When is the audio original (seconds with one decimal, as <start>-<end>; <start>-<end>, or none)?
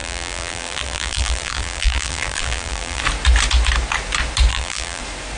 3.0-4.5; 5.0-5.4